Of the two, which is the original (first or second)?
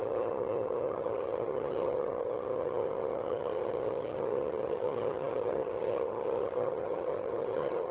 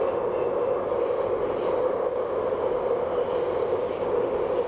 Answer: second